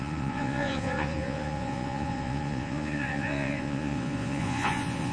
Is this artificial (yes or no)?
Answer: yes